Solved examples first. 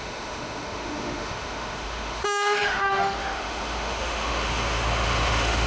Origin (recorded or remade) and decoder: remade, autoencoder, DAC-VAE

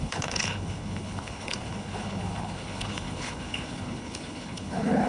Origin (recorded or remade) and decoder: remade, codec, HILCodec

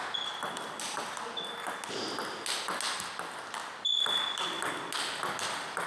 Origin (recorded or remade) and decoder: recorded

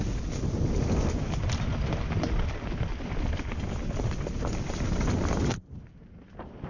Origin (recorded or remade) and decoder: recorded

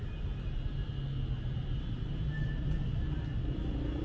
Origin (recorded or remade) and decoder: recorded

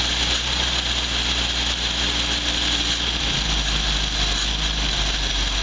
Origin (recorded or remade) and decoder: recorded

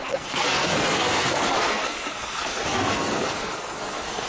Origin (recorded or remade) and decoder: remade, codec, SNAC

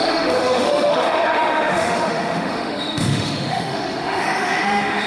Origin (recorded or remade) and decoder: remade, autoencoder, DAC-VAE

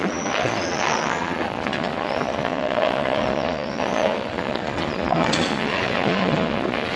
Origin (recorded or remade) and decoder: remade, vocoder, Vocos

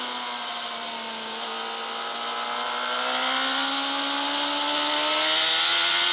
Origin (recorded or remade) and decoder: recorded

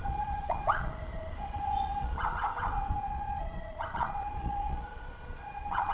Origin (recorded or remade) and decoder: remade, vocoder, Vocos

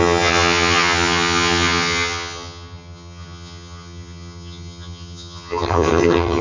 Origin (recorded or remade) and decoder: remade, vocoder, HiFi-GAN